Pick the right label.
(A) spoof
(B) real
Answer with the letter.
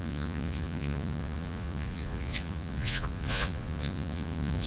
A